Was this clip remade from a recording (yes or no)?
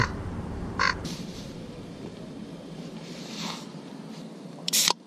yes